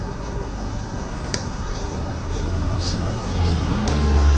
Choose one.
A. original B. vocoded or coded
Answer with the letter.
B